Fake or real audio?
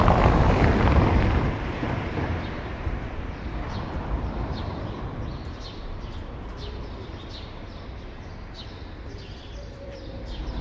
fake